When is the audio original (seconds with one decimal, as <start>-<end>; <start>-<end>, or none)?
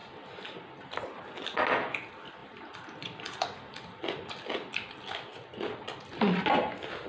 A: 0.0-2.4; 4.3-5.3; 6.1-7.1